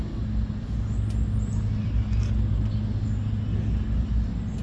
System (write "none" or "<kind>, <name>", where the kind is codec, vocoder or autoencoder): none